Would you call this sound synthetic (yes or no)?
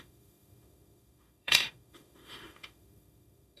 yes